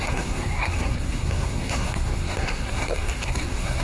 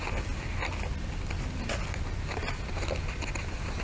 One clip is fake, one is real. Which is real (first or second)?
second